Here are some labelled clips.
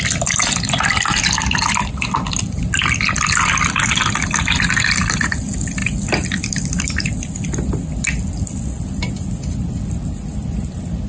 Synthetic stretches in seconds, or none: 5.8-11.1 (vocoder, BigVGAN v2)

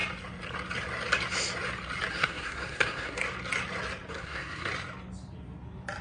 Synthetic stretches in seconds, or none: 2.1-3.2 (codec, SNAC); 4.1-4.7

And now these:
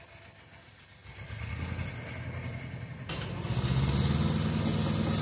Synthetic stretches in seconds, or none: none

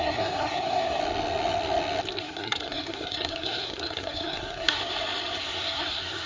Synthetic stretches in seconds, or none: 0.0-1.0 (codec, SNAC); 2.2-4.8; 5.4-6.3

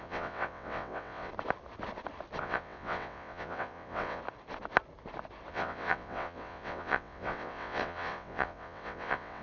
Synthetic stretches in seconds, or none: 0.0-1.3 (vocoder, WaveNeXt); 2.4-4.2; 5.5-9.4

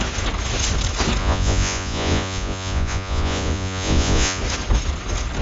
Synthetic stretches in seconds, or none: 1.2-4.4 (vocoder, Vocos)